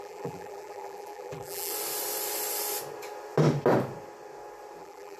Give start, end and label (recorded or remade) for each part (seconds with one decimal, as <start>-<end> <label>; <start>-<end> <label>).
0.0-1.7 remade; 1.7-4.8 recorded; 4.8-5.2 remade